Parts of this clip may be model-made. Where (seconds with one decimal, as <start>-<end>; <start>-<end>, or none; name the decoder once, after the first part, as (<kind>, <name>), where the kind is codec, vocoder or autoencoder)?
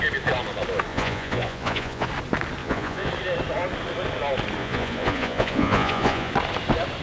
0.9-2.1 (vocoder, Vocos); 2.6-3.1; 4.6-6.3